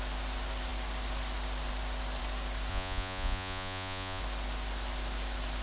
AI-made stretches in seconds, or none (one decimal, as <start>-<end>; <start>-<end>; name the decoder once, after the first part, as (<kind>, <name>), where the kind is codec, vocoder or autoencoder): 2.7-4.2 (vocoder, Vocos)

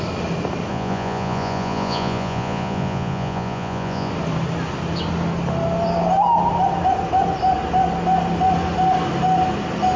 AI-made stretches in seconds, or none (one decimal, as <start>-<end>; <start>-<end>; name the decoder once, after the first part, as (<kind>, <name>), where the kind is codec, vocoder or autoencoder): 0.7-4.1 (vocoder, Vocos)

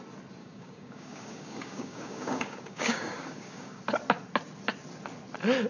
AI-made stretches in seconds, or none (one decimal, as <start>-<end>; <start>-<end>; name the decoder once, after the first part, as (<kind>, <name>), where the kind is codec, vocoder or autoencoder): 0.4-3.8 (codec, DAC)

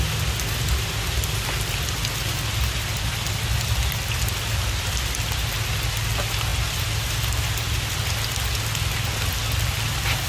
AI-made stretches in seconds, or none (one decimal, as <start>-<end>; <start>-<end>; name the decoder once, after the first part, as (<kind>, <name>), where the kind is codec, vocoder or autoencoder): none

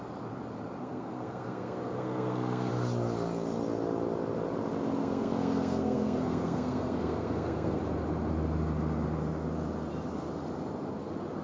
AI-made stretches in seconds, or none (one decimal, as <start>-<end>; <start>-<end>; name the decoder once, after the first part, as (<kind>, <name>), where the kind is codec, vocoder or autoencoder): 0.8-2.7 (codec, SNAC); 5.0-7.8

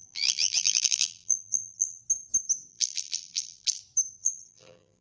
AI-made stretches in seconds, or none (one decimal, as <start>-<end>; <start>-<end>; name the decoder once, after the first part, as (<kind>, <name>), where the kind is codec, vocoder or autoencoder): 0.0-2.0 (vocoder, BigVGAN v2); 2.7-3.8; 4.2-5.0